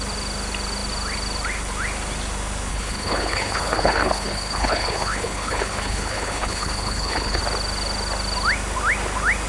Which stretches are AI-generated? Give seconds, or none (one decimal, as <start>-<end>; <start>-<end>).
2.7-7.4

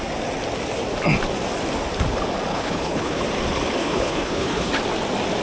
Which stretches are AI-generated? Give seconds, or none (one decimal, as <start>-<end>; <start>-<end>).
2.5-3.2; 3.8-4.7